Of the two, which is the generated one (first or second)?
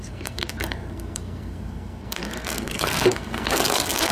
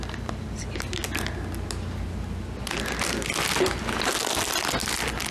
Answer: first